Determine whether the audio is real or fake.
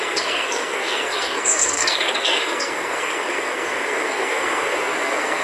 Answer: fake